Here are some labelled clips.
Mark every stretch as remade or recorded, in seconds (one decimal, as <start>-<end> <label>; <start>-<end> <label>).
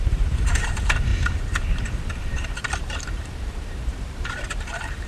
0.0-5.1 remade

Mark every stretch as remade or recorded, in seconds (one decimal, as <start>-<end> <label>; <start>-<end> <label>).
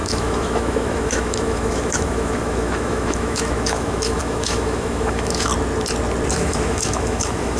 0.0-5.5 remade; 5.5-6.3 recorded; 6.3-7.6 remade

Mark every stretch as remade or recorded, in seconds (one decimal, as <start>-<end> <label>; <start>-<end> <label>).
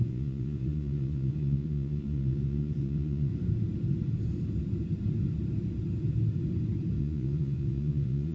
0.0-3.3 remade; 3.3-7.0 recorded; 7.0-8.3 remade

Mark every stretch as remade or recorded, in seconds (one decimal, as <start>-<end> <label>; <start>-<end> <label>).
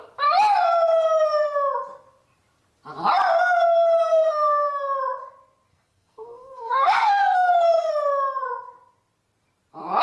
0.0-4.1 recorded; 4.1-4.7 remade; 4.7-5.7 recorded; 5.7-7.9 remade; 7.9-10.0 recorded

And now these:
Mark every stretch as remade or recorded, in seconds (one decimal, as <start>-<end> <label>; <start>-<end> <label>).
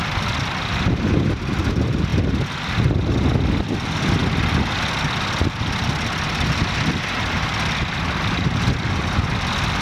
0.0-2.1 recorded; 2.1-2.7 remade; 2.7-9.8 recorded